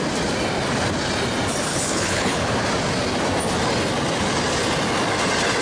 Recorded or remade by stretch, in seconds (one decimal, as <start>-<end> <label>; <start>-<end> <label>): 0.0-1.7 recorded; 1.7-2.5 remade; 2.5-5.6 recorded